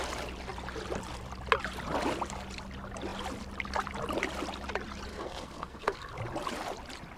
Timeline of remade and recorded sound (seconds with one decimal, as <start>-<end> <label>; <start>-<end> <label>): 0.0-5.1 recorded; 5.1-6.1 remade; 6.1-7.2 recorded